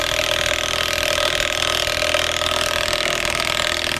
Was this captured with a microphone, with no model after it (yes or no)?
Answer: yes